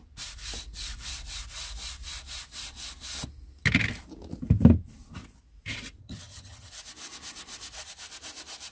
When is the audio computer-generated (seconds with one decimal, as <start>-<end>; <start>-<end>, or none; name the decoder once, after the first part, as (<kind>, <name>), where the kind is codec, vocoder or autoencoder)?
6.0-6.7 (vocoder, HiFi-GAN)

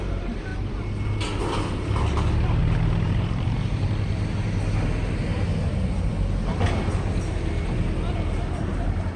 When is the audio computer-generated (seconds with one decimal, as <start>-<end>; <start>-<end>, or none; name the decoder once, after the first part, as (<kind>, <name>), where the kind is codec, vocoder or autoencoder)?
2.6-3.9 (vocoder, BigVGAN v2)

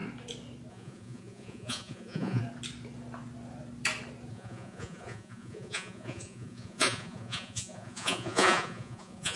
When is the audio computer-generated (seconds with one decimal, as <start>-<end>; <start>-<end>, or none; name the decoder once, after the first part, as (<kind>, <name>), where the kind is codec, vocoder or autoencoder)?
0.7-2.4 (vocoder, Vocos); 4.3-9.4

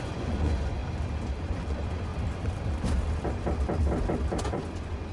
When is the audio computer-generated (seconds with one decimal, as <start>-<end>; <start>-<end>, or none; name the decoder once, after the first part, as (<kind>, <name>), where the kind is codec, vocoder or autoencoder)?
0.0-0.8 (vocoder, Vocos); 1.4-2.1; 4.4-5.1

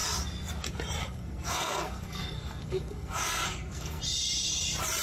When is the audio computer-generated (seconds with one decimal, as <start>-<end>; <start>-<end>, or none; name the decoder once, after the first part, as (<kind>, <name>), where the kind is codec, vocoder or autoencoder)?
1.0-4.0 (codec, SNAC)